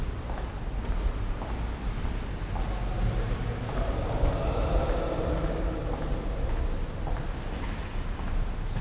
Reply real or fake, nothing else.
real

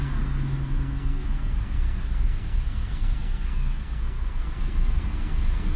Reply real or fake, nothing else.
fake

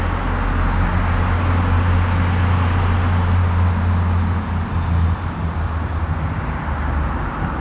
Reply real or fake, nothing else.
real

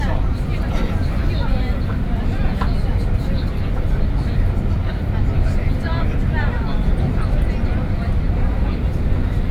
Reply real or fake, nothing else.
real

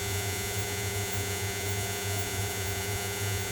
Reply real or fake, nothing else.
fake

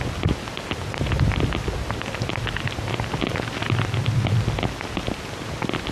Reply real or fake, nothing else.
real